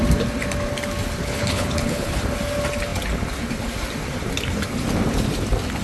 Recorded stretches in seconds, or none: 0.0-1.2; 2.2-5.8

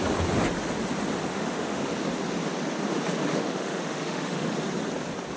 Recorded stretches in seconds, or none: 0.0-1.3; 1.9-3.3; 4.5-5.4

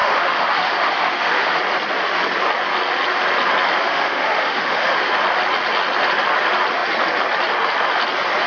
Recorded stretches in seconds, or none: 1.6-3.8; 5.1-8.5

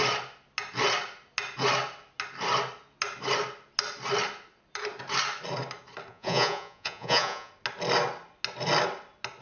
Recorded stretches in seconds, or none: 0.0-6.1; 7.5-9.4

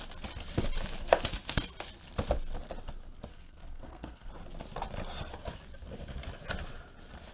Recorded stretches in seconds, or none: 0.0-3.3; 4.3-7.3

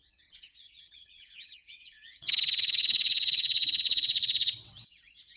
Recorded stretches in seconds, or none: none

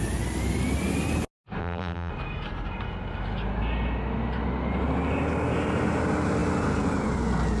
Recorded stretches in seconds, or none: 0.0-1.6; 2.1-7.6

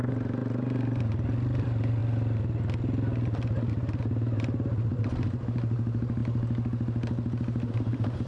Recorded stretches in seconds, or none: 0.4-1.6; 2.0-3.7; 6.2-7.7